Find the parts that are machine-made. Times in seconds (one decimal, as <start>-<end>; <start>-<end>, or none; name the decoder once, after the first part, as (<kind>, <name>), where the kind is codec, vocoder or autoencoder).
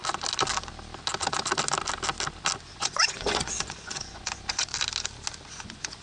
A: 2.6-4.7 (vocoder, Vocos); 5.5-6.0